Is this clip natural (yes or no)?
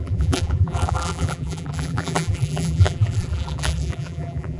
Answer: no